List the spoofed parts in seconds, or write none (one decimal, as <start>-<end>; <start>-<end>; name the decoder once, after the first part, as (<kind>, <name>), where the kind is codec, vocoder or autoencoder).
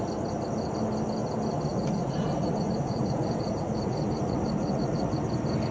1.7-5.1 (vocoder, Vocos)